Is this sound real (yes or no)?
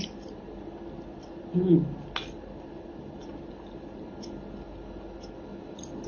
yes